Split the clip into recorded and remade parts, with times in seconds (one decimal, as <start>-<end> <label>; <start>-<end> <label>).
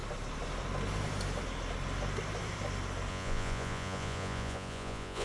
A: 0.0-3.1 recorded; 3.1-5.2 remade